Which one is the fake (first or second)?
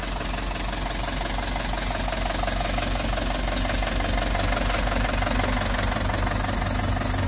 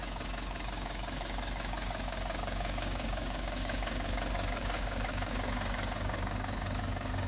second